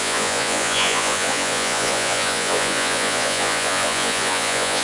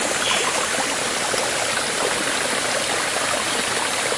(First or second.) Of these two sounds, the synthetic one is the first